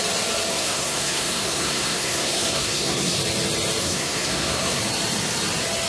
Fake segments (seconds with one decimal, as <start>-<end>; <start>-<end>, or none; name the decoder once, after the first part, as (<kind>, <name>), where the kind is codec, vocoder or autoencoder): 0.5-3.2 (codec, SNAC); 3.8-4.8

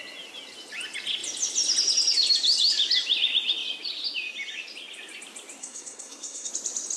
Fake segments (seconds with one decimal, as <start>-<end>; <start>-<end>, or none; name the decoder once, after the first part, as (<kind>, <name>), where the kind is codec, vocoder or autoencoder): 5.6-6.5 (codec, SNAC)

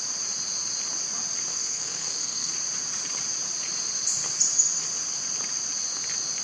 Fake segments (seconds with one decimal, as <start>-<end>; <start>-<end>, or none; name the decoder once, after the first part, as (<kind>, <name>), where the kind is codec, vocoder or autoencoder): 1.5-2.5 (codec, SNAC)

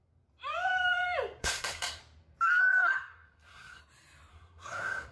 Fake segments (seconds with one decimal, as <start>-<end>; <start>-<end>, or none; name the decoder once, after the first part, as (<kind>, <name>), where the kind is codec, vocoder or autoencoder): 1.4-2.0 (codec, SNAC); 2.6-3.8; 4.3-5.1